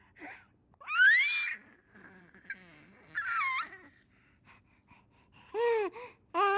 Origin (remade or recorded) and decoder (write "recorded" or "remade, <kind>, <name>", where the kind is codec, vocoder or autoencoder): recorded